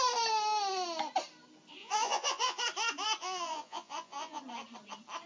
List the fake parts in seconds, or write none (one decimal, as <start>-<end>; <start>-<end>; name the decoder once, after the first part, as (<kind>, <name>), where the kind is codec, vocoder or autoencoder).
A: 1.8-2.6 (vocoder, Vocos); 3.2-4.4